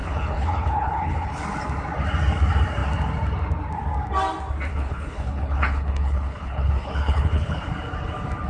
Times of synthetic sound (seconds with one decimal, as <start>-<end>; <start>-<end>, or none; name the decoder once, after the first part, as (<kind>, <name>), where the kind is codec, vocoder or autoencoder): 0.0-1.4 (codec, HILCodec); 4.7-7.7